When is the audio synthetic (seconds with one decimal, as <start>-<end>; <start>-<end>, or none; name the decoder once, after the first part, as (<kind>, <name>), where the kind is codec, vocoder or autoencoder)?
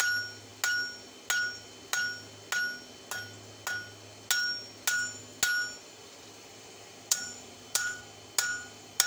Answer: 6.0-8.0 (vocoder, BigVGAN v2)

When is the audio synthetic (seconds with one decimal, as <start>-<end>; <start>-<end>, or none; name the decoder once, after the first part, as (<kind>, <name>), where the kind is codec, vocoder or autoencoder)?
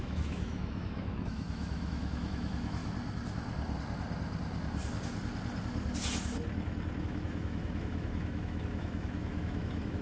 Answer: 0.0-2.8 (autoencoder, DAC-VAE); 7.0-10.0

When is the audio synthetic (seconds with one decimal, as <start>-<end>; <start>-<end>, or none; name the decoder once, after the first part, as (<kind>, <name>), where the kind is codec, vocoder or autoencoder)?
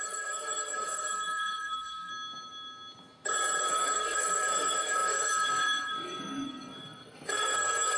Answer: 0.0-2.1 (codec, SNAC); 3.7-8.0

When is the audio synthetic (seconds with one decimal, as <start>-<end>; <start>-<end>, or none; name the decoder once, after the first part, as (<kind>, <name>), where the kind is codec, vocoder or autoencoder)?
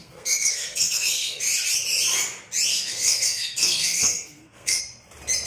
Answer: 0.0-1.4 (codec, SNAC); 2.7-4.8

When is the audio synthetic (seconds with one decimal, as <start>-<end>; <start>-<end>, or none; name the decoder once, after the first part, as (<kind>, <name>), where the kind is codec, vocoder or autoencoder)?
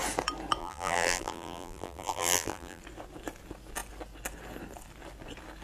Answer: 0.6-2.8 (vocoder, BigVGAN v2)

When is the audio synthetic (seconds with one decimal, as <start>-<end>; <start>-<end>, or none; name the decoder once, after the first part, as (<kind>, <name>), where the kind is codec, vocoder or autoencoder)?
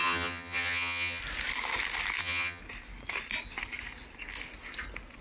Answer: 0.0-1.2 (vocoder, HiFi-GAN); 2.2-2.6